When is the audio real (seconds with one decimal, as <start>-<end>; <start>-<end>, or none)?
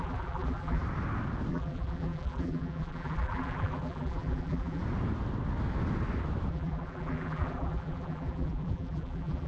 0.8-1.5; 4.8-6.5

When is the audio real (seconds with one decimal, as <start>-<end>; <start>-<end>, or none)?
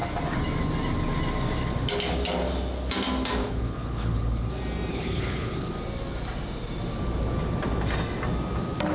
0.0-3.4; 4.5-4.9; 5.7-8.9